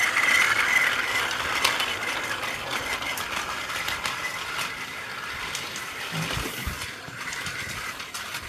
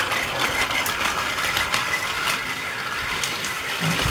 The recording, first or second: first